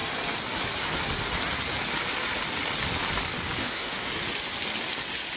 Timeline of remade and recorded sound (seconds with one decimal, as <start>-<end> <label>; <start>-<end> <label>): 0.0-3.6 recorded; 3.6-4.1 remade; 4.1-5.4 recorded